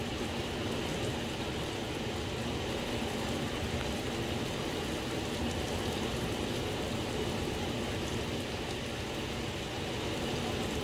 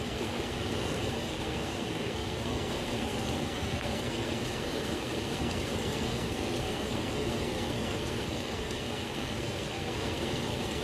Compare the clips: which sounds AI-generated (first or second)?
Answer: second